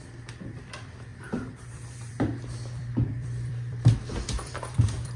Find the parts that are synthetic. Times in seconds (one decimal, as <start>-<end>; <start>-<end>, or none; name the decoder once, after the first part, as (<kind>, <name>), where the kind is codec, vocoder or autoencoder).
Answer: 0.0-5.2 (vocoder, BigVGAN v2)